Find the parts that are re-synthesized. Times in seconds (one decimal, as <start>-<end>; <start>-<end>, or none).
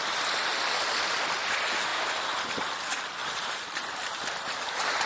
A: 3.2-5.1